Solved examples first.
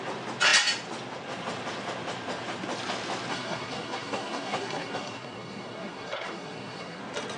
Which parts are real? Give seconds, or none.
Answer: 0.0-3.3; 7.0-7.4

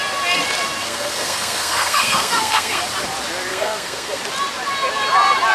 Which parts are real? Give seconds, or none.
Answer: 0.0-0.8; 2.8-3.5; 4.2-5.5